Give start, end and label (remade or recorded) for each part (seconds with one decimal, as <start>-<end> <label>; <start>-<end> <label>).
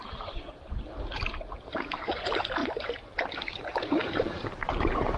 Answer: 0.0-0.9 remade; 0.9-1.6 recorded; 1.6-5.2 remade